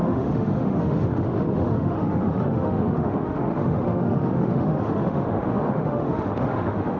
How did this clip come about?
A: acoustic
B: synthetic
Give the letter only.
B